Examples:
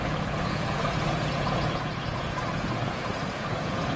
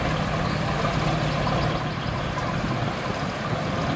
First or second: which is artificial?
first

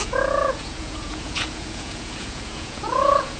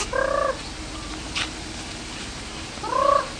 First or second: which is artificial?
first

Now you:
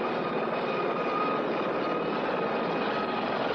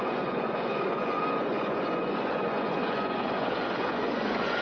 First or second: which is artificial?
second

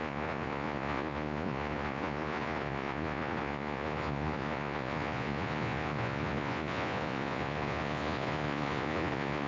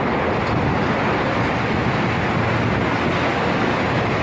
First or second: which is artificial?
first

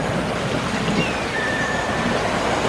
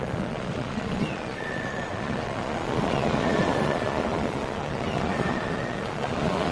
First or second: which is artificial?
second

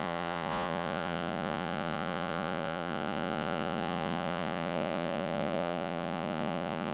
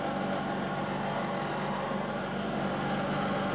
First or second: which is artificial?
first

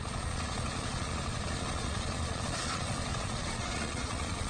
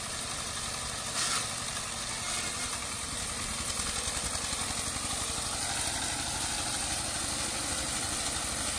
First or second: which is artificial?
first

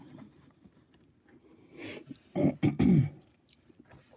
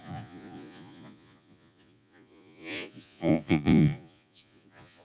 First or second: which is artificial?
second